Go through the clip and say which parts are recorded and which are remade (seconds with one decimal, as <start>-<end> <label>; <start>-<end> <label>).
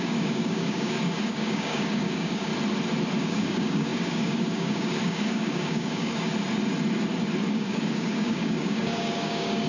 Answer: 0.0-2.5 remade; 2.5-3.2 recorded; 3.2-6.3 remade; 6.3-7.4 recorded; 7.4-9.7 remade